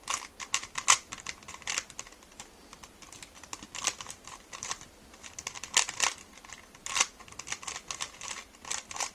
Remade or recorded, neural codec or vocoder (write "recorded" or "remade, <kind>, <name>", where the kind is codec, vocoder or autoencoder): recorded